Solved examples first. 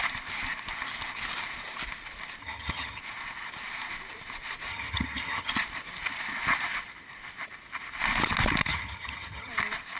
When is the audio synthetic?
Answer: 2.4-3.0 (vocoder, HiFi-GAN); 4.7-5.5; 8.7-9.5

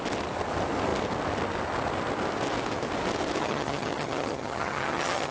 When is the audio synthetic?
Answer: 3.4-5.3 (vocoder, HiFi-GAN)

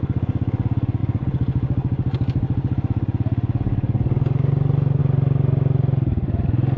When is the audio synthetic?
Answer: none

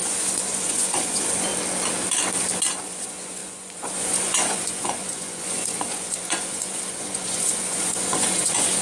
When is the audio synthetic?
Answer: 0.0-1.5 (vocoder, Vocos); 2.8-8.8

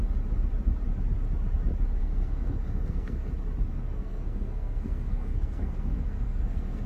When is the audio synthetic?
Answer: 2.0-3.3 (codec, SNAC); 3.7-6.9

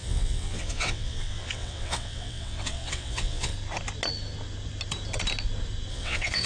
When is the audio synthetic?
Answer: 0.0-3.5 (vocoder, WaveNeXt); 5.9-6.5

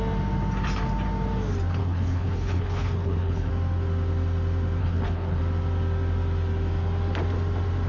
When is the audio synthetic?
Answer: 1.8-3.5 (codec, HILCodec); 4.8-5.4